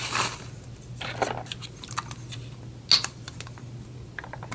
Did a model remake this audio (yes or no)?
no